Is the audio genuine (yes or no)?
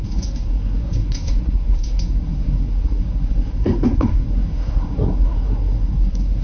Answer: no